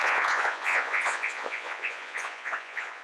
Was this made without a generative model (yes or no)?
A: no